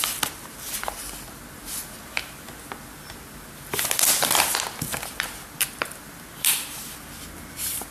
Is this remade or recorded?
recorded